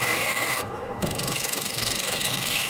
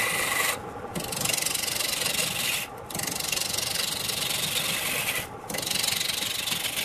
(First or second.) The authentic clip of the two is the second